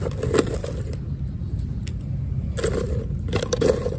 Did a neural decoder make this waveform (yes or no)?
no